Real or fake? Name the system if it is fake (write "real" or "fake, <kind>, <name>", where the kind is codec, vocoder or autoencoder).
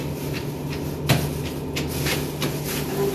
real